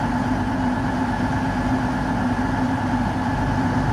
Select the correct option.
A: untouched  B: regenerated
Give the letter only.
A